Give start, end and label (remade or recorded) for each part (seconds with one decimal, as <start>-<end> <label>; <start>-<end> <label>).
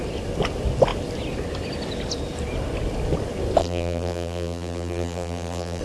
0.0-3.6 recorded; 3.6-5.8 remade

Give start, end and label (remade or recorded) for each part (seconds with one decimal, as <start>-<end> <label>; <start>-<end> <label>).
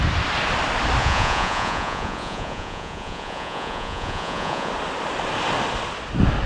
0.0-1.0 recorded; 1.0-4.7 remade; 4.7-6.5 recorded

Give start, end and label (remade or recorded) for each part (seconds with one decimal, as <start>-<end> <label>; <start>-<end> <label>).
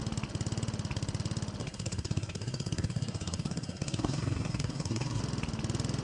0.0-1.6 recorded; 1.6-5.2 remade; 5.2-6.0 recorded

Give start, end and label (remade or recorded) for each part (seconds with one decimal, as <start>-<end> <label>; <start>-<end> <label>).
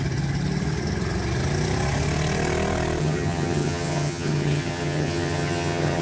0.0-3.0 recorded; 3.0-6.0 remade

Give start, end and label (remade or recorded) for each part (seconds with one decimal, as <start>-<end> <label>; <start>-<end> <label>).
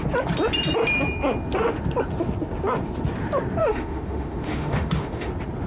0.0-3.6 recorded; 3.6-5.3 remade; 5.3-5.7 recorded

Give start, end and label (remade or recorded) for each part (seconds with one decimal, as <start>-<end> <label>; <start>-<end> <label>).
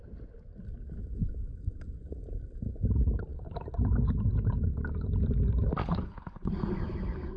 0.0-5.8 recorded; 5.8-6.5 remade; 6.5-7.4 recorded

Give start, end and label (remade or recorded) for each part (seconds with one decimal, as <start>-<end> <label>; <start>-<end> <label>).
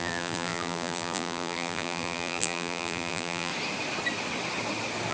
0.0-3.5 remade; 3.5-5.1 recorded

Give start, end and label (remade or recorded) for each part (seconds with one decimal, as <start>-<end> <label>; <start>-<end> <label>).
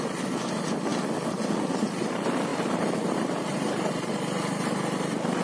0.0-2.5 recorded; 2.5-3.9 remade; 3.9-5.4 recorded